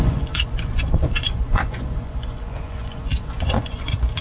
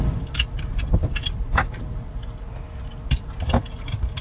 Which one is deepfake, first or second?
first